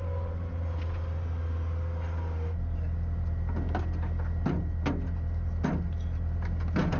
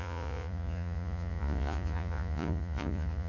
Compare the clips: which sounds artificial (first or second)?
second